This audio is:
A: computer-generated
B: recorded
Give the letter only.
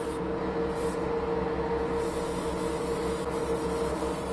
B